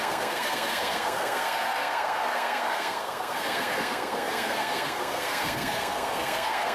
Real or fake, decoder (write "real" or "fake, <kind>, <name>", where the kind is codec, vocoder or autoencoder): fake, codec, SNAC